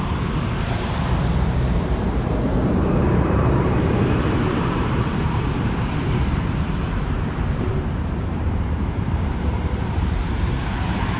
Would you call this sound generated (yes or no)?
yes